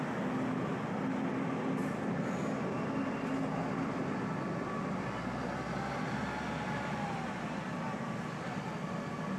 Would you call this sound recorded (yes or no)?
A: yes